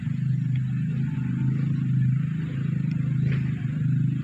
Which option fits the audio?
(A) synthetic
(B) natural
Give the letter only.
B